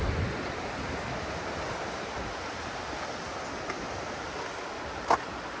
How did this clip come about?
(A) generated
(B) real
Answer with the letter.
B